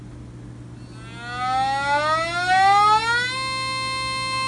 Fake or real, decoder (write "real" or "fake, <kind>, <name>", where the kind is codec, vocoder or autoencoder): real